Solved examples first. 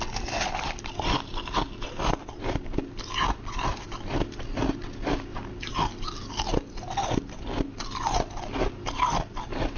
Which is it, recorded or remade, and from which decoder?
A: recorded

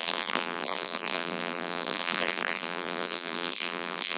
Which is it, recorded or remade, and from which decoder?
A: remade, vocoder, BigVGAN v2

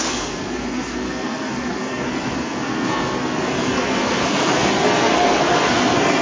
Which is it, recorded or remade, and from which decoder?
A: remade, codec, SNAC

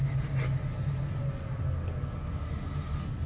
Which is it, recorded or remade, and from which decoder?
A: recorded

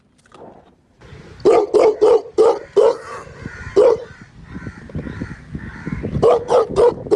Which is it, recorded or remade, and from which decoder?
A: recorded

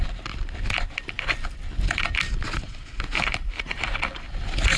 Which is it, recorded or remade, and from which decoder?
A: recorded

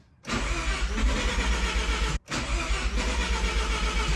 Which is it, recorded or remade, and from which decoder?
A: recorded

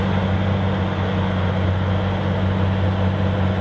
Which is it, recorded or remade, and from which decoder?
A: recorded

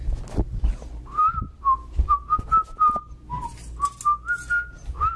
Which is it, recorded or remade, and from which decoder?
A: recorded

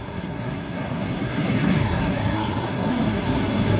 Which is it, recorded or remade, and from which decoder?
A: remade, codec, SNAC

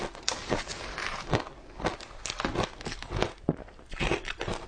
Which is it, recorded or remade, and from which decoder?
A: recorded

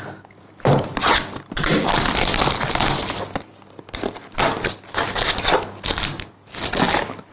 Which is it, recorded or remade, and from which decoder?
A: recorded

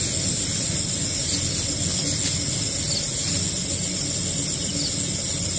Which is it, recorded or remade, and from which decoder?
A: recorded